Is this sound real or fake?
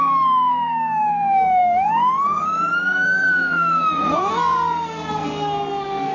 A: fake